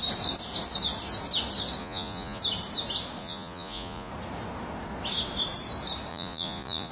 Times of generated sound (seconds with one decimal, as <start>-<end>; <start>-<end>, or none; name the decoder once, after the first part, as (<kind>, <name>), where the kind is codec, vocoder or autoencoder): 1.8-2.4 (vocoder, Vocos); 3.2-4.1; 6.1-6.9